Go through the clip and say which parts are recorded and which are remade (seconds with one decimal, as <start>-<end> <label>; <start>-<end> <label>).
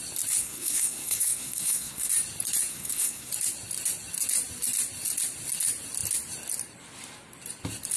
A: 0.0-0.4 recorded; 0.4-2.1 remade; 2.1-2.7 recorded; 2.7-3.3 remade; 3.3-8.0 recorded